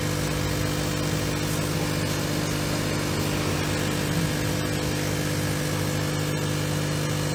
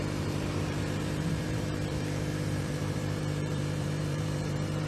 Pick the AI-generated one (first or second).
second